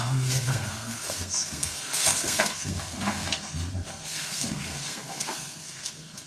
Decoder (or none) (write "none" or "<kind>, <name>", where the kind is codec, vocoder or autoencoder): codec, SNAC